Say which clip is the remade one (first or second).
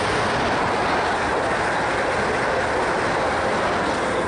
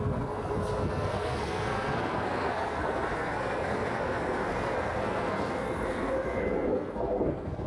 second